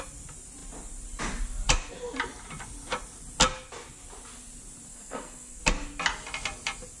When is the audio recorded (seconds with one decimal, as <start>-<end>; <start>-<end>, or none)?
0.0-4.9; 5.6-7.0